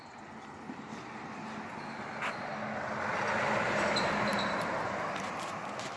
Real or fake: real